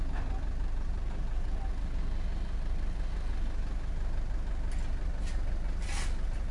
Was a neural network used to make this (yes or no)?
no